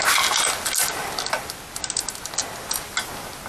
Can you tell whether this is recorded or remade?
recorded